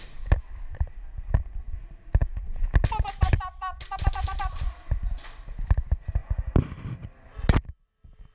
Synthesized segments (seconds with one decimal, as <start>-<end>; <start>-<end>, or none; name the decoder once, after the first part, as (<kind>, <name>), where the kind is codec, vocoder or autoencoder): none